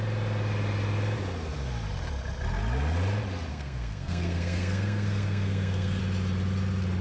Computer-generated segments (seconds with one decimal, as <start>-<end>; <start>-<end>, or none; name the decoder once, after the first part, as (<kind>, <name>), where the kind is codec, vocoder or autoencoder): 3.5-6.0 (codec, SNAC)